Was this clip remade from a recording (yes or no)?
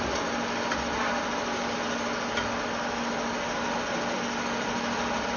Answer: no